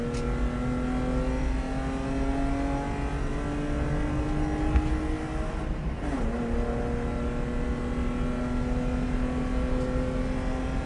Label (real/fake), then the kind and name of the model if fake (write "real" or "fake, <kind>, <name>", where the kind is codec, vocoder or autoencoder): real